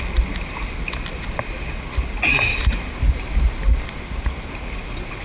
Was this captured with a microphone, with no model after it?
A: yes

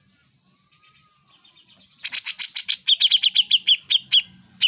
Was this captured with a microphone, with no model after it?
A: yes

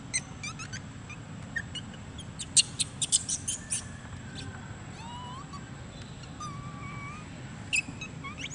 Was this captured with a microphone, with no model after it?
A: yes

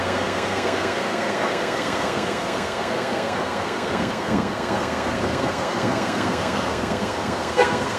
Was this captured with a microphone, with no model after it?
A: no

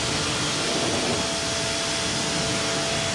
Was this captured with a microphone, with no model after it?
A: yes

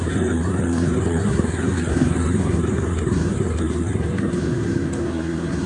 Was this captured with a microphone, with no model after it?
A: no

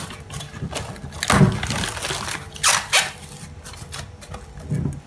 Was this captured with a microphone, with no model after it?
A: yes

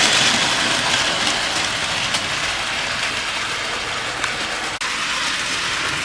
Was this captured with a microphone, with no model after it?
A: yes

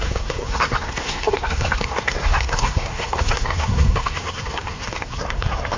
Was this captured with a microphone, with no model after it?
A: no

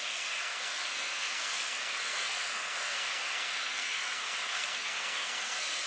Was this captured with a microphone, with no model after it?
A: no